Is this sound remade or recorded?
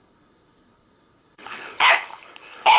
remade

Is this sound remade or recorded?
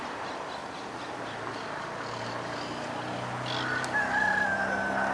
recorded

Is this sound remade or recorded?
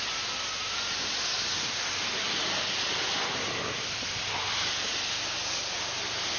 recorded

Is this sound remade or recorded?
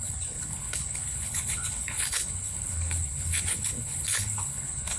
remade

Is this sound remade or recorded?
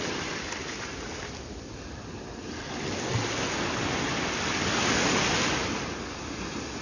recorded